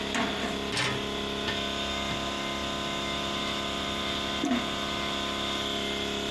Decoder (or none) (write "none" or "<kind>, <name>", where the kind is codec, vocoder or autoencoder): none